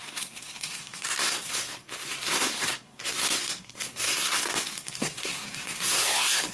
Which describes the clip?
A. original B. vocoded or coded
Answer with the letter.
B